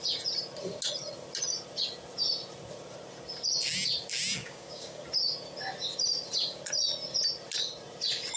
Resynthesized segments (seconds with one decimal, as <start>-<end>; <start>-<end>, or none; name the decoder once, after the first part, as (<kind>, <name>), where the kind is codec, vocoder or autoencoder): 4.4-5.0 (codec, DAC)